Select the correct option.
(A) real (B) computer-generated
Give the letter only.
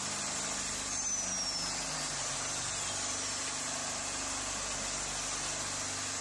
A